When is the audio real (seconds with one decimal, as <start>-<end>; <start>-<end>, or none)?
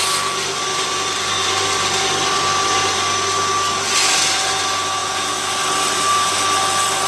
0.0-5.0; 5.5-7.1